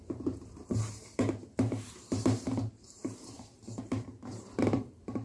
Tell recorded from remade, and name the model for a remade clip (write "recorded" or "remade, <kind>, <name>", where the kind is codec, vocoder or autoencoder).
remade, vocoder, BigVGAN v2